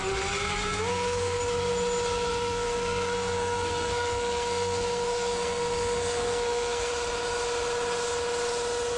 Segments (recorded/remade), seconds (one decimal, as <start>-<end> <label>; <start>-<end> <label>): 0.0-0.9 recorded; 0.9-1.4 remade; 1.4-2.3 recorded; 2.3-6.9 remade; 6.9-9.0 recorded